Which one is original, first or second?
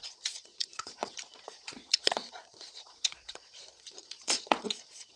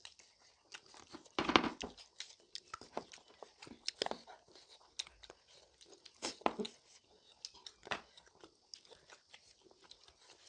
second